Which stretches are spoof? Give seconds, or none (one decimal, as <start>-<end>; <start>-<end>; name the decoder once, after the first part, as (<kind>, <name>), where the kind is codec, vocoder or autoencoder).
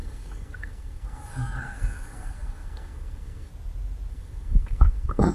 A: 0.0-3.5 (codec, SNAC); 4.1-5.3